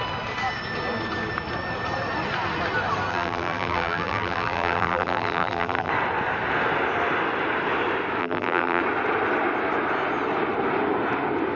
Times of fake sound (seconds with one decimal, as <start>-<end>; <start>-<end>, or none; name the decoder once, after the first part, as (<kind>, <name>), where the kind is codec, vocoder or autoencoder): 3.1-5.9 (vocoder, BigVGAN v2); 8.2-8.8